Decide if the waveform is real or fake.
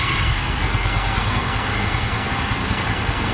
fake